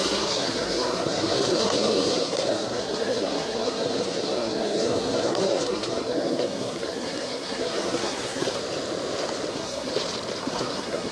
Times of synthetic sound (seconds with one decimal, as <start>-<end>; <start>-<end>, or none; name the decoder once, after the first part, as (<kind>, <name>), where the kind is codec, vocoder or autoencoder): 0.0-8.6 (codec, SNAC); 9.5-9.9; 10.4-11.1